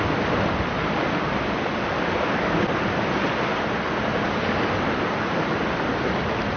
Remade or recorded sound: recorded